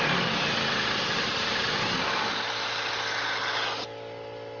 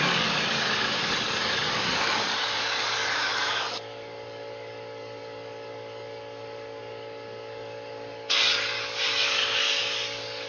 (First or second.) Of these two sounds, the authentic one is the first